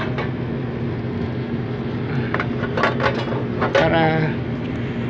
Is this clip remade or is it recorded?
recorded